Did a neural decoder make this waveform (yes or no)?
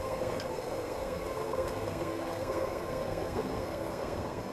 yes